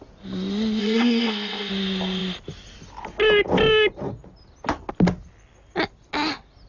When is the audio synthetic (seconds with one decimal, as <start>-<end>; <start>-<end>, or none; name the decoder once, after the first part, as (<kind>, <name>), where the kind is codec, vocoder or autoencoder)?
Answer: 0.8-1.7 (codec, ZipCodec)